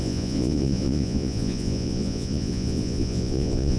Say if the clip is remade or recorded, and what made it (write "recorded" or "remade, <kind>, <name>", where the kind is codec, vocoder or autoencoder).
remade, vocoder, Vocos